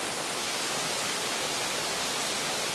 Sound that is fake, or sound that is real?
real